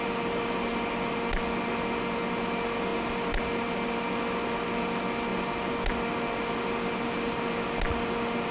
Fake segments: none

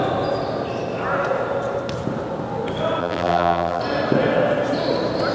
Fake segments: 3.0-3.8 (vocoder, BigVGAN v2)